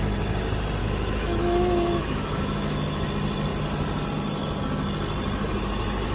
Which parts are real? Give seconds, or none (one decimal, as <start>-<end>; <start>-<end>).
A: 0.0-0.8; 3.1-6.1